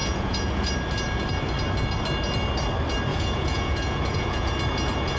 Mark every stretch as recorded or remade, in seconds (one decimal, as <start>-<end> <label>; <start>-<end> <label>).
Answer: 0.0-0.7 remade; 0.7-3.1 recorded; 3.1-4.5 remade; 4.5-5.2 recorded